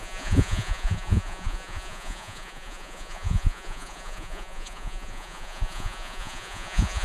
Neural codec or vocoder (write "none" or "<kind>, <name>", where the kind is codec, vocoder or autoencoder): vocoder, Vocos